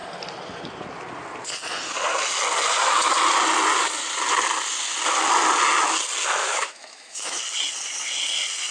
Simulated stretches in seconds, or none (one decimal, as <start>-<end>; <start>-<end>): 6.4-7.4